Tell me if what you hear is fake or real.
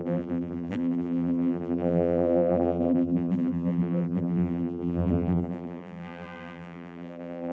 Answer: fake